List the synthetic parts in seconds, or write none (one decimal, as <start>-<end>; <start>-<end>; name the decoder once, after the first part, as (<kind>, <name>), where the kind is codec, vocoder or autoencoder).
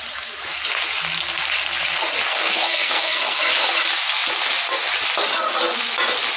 2.3-3.4 (codec, SNAC)